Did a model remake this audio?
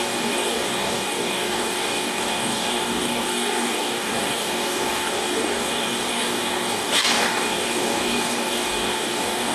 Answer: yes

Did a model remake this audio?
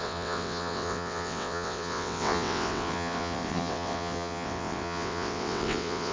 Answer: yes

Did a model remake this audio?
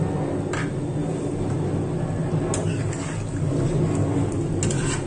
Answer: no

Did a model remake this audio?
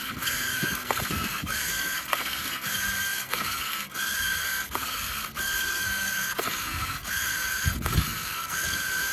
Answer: yes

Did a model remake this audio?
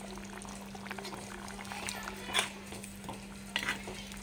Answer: no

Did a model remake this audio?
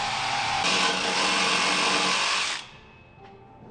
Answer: no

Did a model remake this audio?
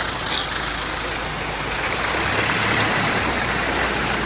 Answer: no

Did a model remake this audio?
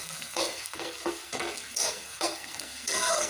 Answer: yes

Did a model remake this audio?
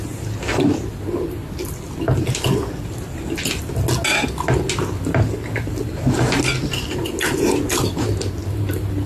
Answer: no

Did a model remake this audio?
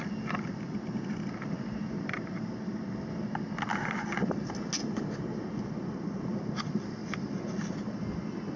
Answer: no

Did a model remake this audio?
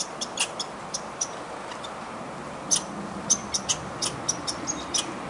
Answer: no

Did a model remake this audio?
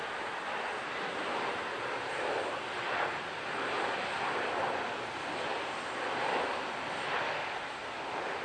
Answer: no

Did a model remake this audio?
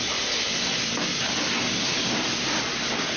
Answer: no